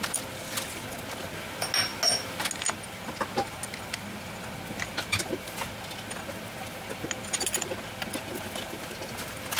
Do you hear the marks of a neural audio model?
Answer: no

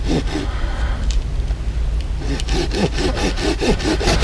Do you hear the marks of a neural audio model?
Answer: no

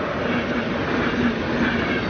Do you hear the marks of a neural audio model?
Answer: no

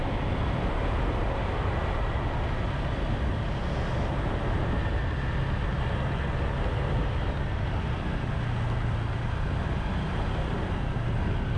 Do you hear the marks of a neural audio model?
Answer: no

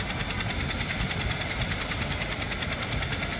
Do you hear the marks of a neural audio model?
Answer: no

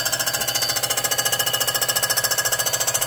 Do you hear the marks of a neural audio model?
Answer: no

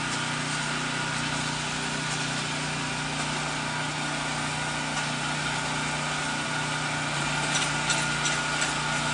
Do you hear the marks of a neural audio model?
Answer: no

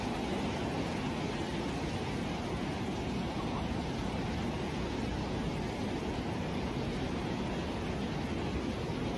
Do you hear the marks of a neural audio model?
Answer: no